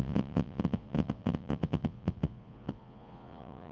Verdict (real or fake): fake